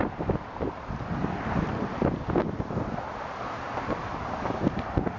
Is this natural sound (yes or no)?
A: yes